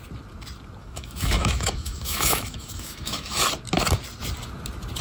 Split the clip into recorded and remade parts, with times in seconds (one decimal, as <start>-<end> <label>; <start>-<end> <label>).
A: 0.0-0.8 recorded; 0.8-3.4 remade; 3.4-5.0 recorded